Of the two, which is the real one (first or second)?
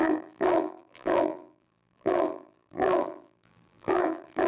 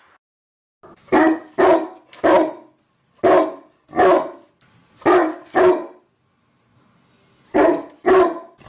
second